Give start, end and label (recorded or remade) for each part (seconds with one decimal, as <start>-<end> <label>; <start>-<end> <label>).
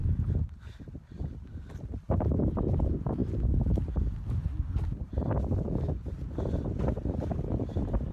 0.0-8.1 recorded